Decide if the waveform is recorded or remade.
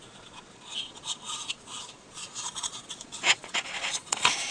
remade